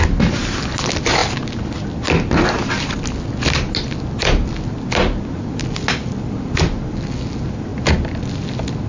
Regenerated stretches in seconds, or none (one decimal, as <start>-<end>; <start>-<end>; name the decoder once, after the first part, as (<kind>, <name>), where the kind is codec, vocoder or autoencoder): none